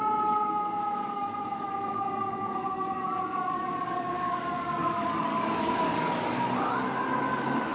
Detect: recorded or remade remade